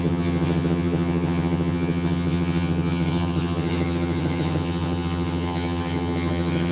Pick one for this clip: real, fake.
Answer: fake